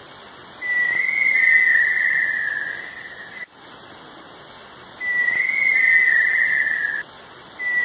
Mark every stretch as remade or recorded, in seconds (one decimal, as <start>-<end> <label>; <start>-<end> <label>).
0.0-1.7 recorded; 1.7-2.8 remade; 2.8-7.8 recorded